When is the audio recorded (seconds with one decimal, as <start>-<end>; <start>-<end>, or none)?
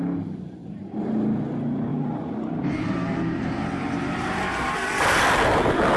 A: 0.0-1.9; 5.2-6.0